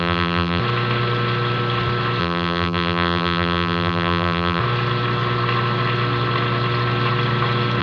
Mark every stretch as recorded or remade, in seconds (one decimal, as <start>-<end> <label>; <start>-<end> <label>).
0.0-0.6 remade; 0.6-2.2 recorded; 2.2-4.6 remade; 4.6-7.8 recorded